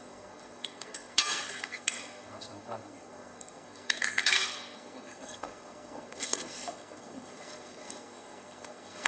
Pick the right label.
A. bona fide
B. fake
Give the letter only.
B